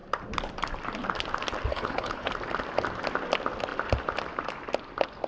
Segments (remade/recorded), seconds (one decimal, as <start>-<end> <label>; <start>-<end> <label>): 0.0-1.7 recorded; 1.7-2.3 remade; 2.3-5.3 recorded